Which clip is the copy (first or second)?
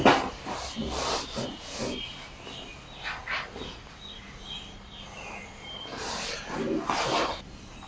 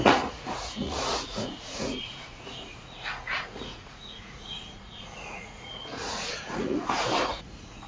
second